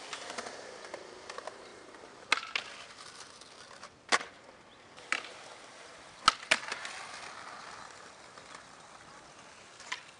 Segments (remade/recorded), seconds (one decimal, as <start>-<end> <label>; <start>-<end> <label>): 0.0-10.2 recorded

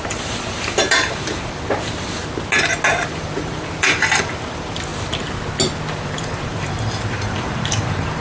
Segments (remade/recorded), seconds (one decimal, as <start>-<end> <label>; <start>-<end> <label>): 0.0-2.2 remade; 2.2-2.9 recorded; 2.9-4.9 remade; 4.9-5.9 recorded; 5.9-8.2 remade

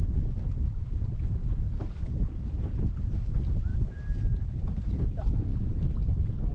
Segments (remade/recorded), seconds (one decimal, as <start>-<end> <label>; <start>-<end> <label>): 0.0-1.4 recorded; 1.4-2.4 remade; 2.4-3.7 recorded; 3.7-4.4 remade; 4.4-5.5 recorded; 5.5-6.5 remade